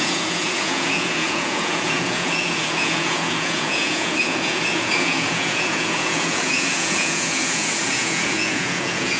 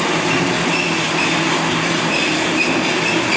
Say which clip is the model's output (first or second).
first